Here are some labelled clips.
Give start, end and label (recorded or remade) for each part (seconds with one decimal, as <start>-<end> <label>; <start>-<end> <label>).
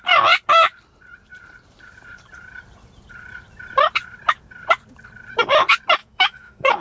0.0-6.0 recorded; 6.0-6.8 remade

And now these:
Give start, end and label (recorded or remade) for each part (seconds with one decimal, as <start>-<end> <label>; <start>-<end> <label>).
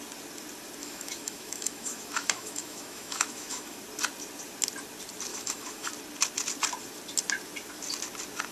0.0-0.8 recorded; 0.8-3.8 remade; 3.8-5.3 recorded; 5.3-5.9 remade; 5.9-8.5 recorded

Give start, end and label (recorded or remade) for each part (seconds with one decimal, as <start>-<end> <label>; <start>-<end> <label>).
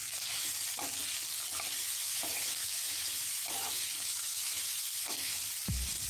0.0-0.5 remade; 0.5-1.8 recorded; 1.8-5.5 remade; 5.5-6.1 recorded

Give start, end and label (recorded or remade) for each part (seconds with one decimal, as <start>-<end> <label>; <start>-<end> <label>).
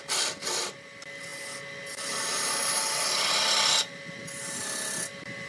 0.0-5.5 recorded